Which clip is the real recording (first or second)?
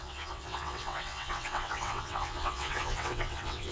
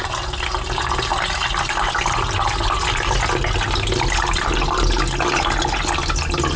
second